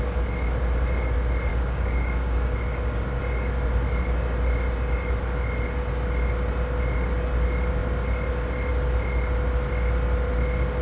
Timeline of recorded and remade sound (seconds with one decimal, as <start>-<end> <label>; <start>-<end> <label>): 0.0-1.5 recorded; 1.5-3.2 remade; 3.2-10.8 recorded